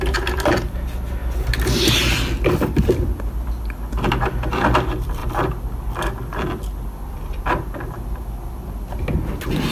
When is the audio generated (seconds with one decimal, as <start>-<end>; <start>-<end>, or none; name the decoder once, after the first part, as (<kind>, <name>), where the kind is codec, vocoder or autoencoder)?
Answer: none